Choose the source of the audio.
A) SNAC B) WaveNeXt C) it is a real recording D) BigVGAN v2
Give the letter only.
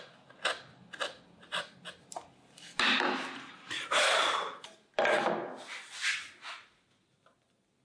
C